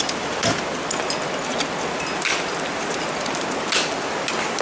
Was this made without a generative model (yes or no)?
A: yes